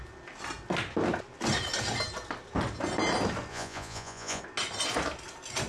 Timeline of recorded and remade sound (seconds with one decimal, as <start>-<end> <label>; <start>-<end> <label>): 0.0-3.5 recorded; 3.5-4.4 remade; 4.4-5.7 recorded